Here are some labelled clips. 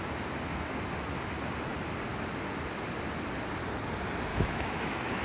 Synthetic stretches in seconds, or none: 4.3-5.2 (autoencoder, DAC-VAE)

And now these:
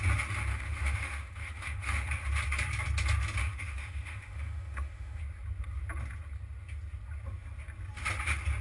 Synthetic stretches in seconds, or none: 0.5-2.1 (autoencoder, DAC-VAE); 3.4-5.2

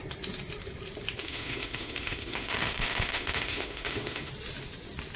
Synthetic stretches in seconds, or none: 1.2-4.3 (autoencoder, DAC-VAE)

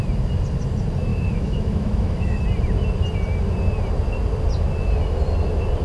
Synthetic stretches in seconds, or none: 1.1-2.4 (autoencoder, DAC-VAE)